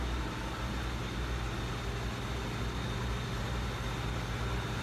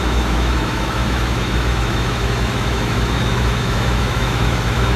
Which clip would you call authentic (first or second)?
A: first